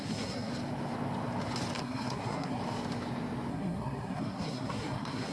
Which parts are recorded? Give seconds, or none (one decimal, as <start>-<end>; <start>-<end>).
0.5-1.8; 2.6-3.5